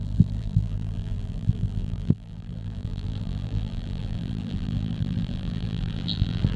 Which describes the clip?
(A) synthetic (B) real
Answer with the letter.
A